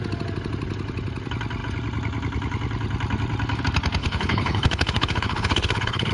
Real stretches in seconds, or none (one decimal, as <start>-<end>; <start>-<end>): 0.0-4.0